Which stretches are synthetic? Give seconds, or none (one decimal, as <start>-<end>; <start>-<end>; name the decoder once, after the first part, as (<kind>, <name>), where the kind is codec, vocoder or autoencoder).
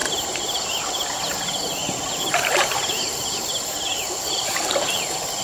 0.0-0.6 (vocoder, BigVGAN v2); 1.8-5.0